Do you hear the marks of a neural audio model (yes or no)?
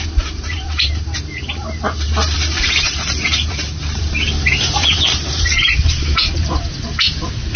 yes